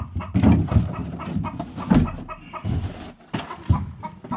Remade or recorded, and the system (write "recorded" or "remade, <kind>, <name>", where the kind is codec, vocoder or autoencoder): recorded